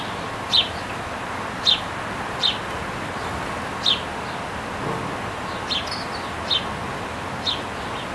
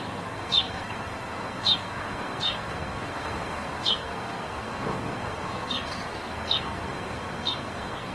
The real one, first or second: first